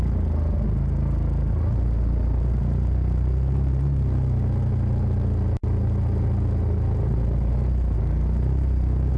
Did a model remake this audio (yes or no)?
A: no